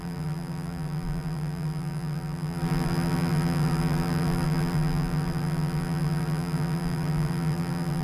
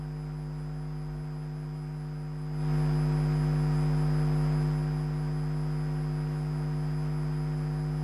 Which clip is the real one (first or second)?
second